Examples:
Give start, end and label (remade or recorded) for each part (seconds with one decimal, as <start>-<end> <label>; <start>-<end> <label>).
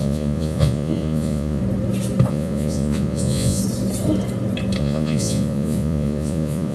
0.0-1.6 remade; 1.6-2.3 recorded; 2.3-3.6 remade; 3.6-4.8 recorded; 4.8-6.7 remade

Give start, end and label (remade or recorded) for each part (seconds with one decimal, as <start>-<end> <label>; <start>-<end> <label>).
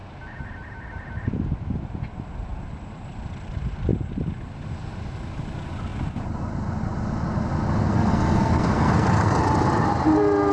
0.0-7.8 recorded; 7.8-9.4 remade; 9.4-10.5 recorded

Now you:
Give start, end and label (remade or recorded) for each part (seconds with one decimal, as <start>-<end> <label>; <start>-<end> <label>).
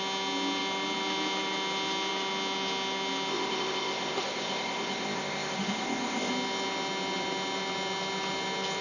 0.0-3.3 recorded; 3.3-6.3 remade; 6.3-8.8 recorded